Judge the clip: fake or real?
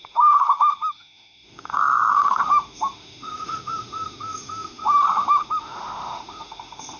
fake